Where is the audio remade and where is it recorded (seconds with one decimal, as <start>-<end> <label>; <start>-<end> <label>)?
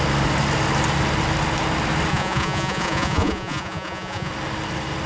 0.0-2.1 recorded; 2.1-4.3 remade; 4.3-5.1 recorded